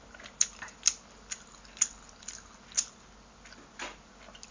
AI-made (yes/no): no